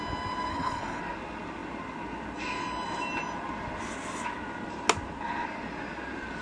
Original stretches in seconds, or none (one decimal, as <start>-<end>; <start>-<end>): 0.0-0.5; 1.0-6.4